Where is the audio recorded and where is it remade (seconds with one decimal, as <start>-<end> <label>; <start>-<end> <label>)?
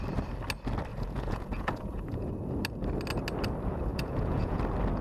0.0-0.9 recorded; 0.9-2.3 remade; 2.3-3.9 recorded; 3.9-4.6 remade; 4.6-5.0 recorded